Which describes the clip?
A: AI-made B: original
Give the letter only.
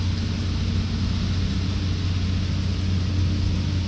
B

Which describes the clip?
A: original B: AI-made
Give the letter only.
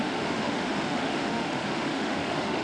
B